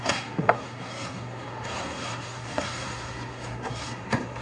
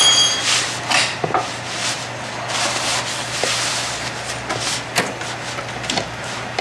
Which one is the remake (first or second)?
first